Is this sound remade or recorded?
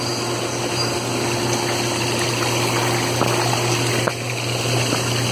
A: recorded